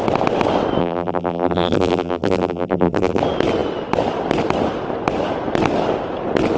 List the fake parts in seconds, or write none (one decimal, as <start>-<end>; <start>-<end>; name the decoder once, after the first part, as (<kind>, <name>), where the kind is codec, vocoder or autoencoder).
0.8-3.2 (vocoder, BigVGAN v2)